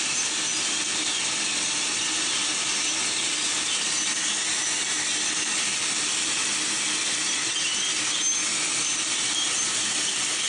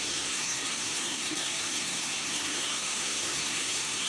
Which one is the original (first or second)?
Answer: first